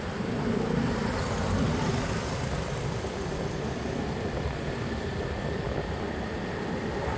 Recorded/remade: recorded